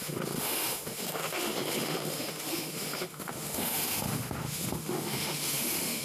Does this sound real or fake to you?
fake